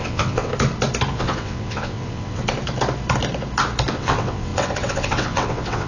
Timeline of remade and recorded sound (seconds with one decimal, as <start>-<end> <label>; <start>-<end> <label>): 0.0-0.5 remade; 0.5-1.2 recorded; 1.2-2.4 remade; 2.4-3.9 recorded; 3.9-5.9 remade